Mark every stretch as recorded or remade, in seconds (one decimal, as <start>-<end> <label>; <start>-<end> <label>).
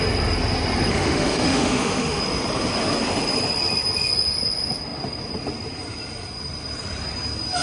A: 0.0-0.9 recorded; 0.9-2.2 remade; 2.2-7.6 recorded